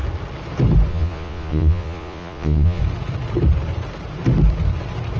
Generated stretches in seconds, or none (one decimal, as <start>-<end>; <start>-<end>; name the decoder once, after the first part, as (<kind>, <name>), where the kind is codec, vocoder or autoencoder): 0.9-2.8 (vocoder, Vocos)